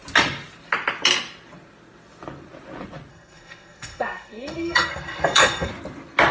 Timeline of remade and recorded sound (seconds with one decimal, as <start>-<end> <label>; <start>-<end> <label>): 0.0-3.1 recorded; 3.1-5.7 remade; 5.7-6.3 recorded